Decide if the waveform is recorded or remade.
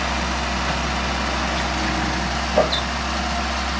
recorded